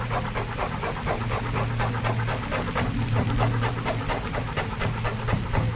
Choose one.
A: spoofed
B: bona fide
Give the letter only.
B